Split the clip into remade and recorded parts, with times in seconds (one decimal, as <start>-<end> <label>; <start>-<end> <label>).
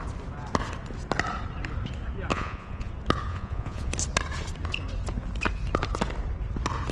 0.0-2.3 recorded; 2.3-2.9 remade; 2.9-3.3 recorded; 3.3-3.9 remade; 3.9-6.9 recorded